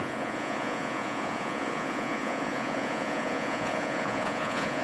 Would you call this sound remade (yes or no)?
yes